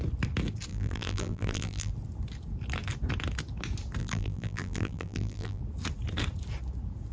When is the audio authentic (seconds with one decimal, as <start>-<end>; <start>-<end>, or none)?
0.0-0.7; 1.9-4.0; 5.6-7.1

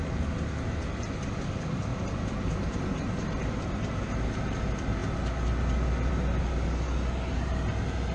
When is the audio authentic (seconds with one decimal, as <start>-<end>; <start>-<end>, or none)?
0.0-1.9; 3.6-8.1

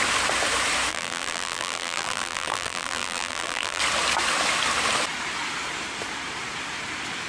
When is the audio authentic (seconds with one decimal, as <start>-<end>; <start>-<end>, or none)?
0.0-0.9; 3.8-7.3